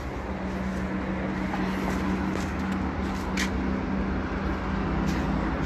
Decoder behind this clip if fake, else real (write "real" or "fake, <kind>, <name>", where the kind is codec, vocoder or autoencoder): real